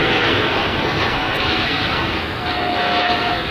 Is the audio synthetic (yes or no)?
yes